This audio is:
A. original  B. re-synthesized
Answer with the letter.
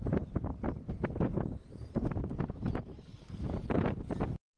B